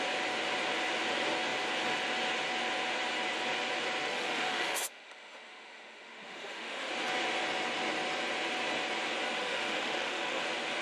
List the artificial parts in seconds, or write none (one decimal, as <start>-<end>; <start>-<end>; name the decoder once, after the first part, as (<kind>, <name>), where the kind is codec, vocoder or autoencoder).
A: 4.0-6.9 (autoencoder, DAC-VAE); 9.4-10.4